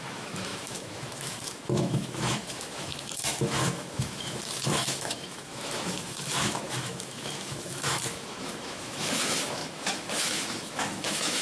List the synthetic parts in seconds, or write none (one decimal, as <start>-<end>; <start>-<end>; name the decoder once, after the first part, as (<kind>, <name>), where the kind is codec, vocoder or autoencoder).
0.0-11.4 (autoencoder, DAC-VAE)